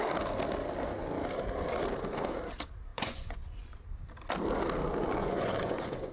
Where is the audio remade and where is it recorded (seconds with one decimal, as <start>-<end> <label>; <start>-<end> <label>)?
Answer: 0.0-2.9 recorded; 2.9-3.8 remade; 3.8-5.2 recorded; 5.2-6.1 remade